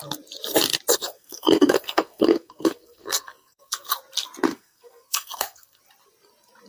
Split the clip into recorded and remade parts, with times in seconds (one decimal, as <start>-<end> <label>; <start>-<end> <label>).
0.0-0.9 recorded; 0.9-3.9 remade; 3.9-4.5 recorded; 4.5-5.8 remade; 5.8-6.7 recorded